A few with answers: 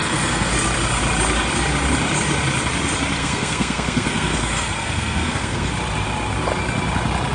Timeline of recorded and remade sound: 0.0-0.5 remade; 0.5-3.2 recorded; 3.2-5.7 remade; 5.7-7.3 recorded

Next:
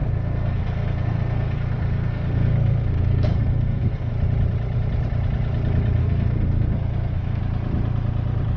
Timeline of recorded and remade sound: 0.0-4.1 remade; 4.1-6.0 recorded; 6.0-7.4 remade; 7.4-8.6 recorded

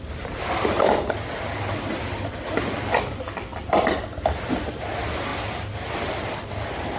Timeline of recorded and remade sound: 0.0-7.0 recorded

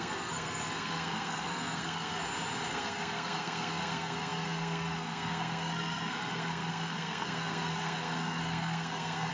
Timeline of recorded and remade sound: 0.0-2.2 remade; 2.2-2.7 recorded; 2.7-9.3 remade

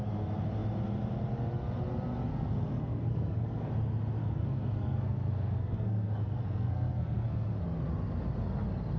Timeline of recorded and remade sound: 0.0-2.3 recorded; 2.3-3.7 remade; 3.7-4.2 recorded; 4.2-7.6 remade; 7.6-9.0 recorded

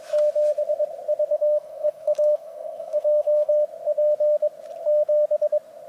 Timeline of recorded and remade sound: 0.0-1.3 recorded; 1.3-3.5 remade; 3.5-5.9 recorded

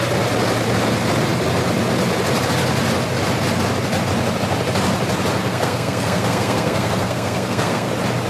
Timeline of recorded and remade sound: 0.0-5.4 recorded; 5.4-7.9 remade; 7.9-8.3 recorded

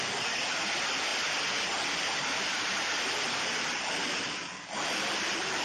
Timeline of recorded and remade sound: 0.0-5.6 recorded